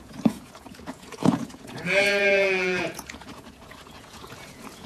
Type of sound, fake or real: fake